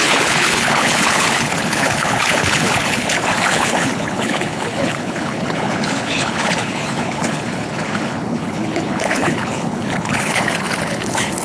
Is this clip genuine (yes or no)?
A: no